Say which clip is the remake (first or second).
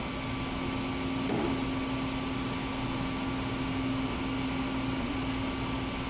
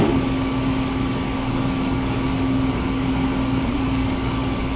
second